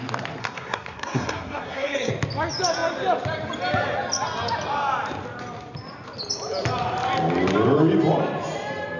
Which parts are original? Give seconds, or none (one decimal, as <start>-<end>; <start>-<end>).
0.0-0.4; 2.1-9.0